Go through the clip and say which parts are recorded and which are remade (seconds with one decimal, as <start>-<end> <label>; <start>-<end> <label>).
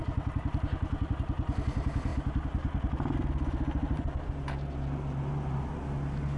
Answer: 0.0-6.4 recorded